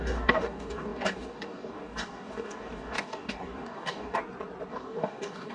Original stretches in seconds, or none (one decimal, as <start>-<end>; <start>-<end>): 4.2-4.7